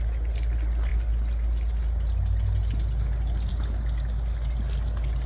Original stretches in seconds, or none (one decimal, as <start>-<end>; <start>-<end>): 0.0-5.3